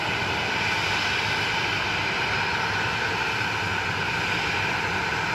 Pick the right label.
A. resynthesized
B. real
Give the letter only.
B